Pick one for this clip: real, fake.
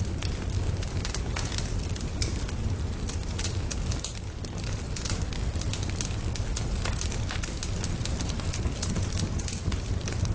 real